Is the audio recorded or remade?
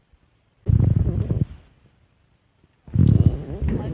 recorded